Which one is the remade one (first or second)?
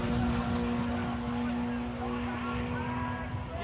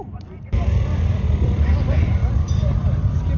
second